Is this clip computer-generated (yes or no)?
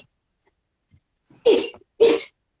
no